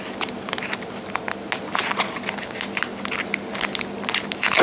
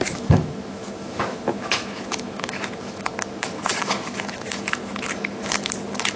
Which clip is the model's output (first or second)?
second